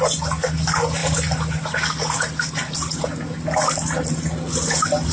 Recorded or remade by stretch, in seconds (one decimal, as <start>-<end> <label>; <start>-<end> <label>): 0.0-5.1 recorded